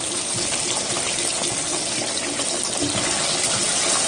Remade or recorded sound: recorded